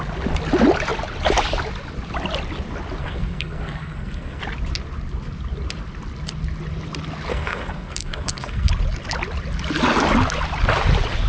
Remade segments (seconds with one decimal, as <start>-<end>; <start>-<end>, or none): 3.0-4.4; 7.3-8.7